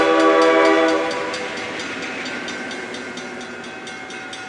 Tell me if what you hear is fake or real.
real